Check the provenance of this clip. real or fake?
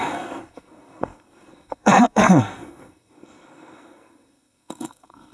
fake